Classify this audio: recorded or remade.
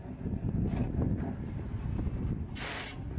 recorded